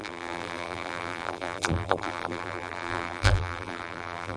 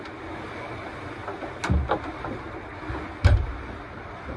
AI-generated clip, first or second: first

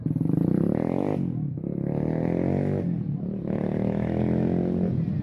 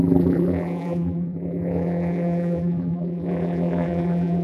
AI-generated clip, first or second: second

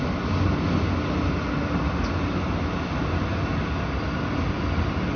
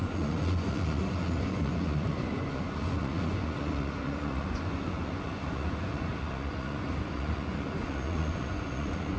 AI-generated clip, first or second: second